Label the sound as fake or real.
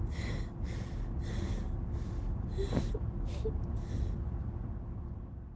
real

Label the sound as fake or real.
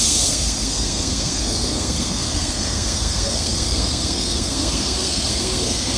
fake